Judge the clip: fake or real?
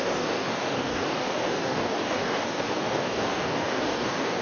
fake